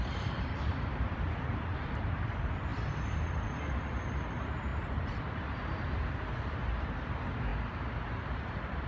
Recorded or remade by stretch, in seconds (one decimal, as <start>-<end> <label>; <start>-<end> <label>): 0.0-7.5 remade; 7.5-8.4 recorded; 8.4-8.9 remade

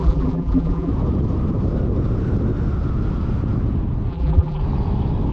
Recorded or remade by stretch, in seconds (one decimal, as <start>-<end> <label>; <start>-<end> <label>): 0.0-0.9 remade; 0.9-4.1 recorded; 4.1-4.6 remade; 4.6-5.3 recorded

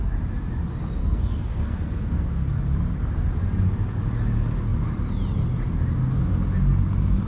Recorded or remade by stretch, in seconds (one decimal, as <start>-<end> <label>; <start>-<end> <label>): 0.0-1.0 recorded; 1.0-2.5 remade; 2.5-7.3 recorded

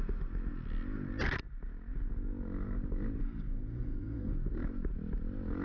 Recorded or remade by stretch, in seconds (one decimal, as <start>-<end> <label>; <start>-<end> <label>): 0.0-3.2 recorded; 3.2-4.3 remade; 4.3-5.6 recorded